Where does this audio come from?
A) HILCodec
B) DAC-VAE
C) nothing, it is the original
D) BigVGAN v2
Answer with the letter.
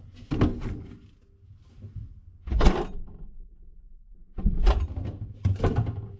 C